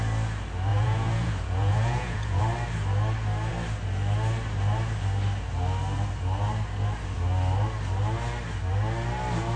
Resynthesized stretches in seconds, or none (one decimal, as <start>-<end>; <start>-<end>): 0.7-2.4